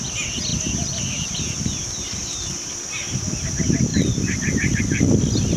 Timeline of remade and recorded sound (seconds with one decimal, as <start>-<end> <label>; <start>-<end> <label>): 0.0-3.9 recorded; 3.9-4.8 remade; 4.8-5.6 recorded

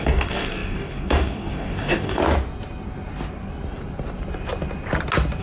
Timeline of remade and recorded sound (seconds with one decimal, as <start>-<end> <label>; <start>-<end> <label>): 0.0-2.2 remade; 2.2-5.4 recorded

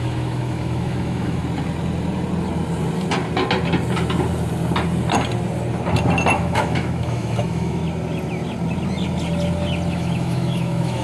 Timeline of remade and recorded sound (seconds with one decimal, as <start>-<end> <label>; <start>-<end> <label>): 0.0-1.4 remade; 1.4-6.4 recorded; 6.4-7.8 remade; 7.8-9.9 recorded; 9.9-11.0 remade

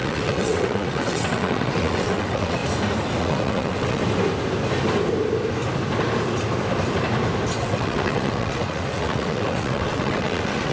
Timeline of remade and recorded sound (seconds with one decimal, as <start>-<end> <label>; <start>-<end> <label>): 0.0-2.6 remade; 2.6-3.2 recorded; 3.2-4.0 remade; 4.0-7.6 recorded; 7.6-10.7 remade

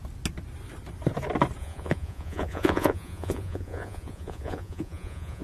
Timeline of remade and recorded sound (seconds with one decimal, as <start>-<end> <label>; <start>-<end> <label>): 0.0-1.6 recorded; 1.6-5.4 remade